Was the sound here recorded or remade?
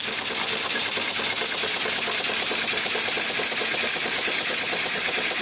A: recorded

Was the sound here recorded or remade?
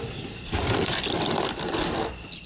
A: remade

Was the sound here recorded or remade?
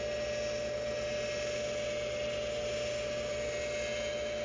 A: recorded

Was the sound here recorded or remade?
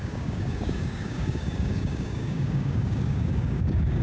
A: remade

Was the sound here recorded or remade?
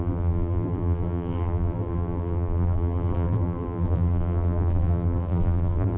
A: remade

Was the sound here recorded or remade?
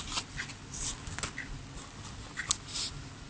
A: recorded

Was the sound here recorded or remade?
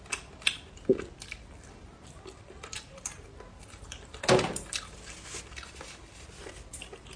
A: recorded